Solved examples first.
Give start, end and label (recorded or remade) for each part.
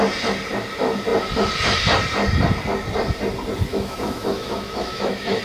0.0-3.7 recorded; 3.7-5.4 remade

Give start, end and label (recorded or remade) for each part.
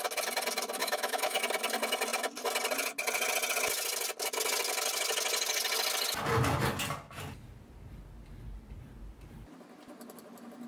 0.0-0.8 recorded; 0.8-1.4 remade; 1.4-10.7 recorded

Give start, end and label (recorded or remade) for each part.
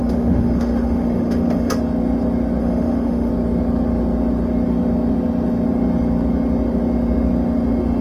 0.0-1.7 remade; 1.7-2.6 recorded; 2.6-3.3 remade; 3.3-8.0 recorded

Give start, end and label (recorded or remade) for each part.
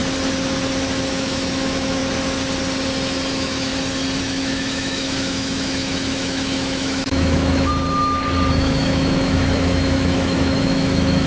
0.0-1.1 recorded; 1.1-2.0 remade; 2.0-3.3 recorded; 3.3-3.7 remade; 3.7-4.2 recorded; 4.2-7.7 remade; 7.7-8.5 recorded; 8.5-11.3 remade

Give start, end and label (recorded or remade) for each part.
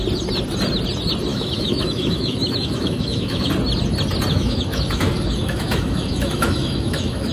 0.0-1.3 recorded; 1.3-3.5 remade; 3.5-4.3 recorded; 4.3-7.3 remade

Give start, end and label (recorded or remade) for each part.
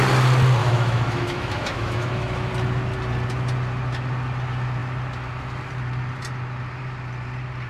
0.0-0.6 recorded; 0.6-2.5 remade; 2.5-7.7 recorded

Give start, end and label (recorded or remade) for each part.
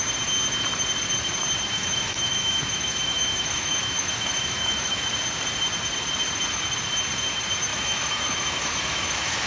0.0-1.7 recorded; 1.7-5.1 remade; 5.1-7.7 recorded; 7.7-9.5 remade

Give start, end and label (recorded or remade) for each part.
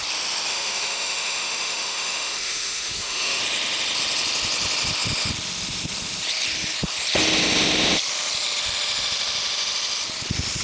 0.0-0.5 recorded; 0.5-3.4 remade; 3.4-10.6 recorded